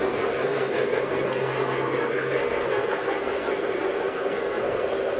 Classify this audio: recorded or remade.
remade